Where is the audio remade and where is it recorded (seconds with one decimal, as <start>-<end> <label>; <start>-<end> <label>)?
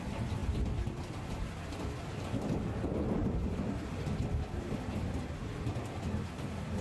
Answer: 0.0-6.8 recorded